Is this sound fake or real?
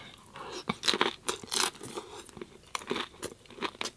real